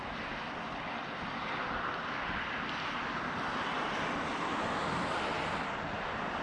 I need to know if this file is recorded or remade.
recorded